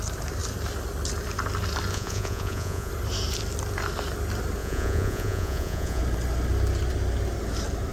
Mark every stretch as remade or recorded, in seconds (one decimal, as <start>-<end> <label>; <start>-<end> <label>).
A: 0.0-1.9 recorded; 1.9-2.9 remade; 2.9-4.6 recorded; 4.6-6.0 remade; 6.0-7.9 recorded